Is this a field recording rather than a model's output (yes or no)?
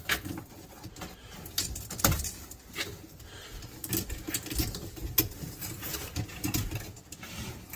yes